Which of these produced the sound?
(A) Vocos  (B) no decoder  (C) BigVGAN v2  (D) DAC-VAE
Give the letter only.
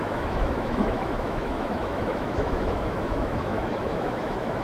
D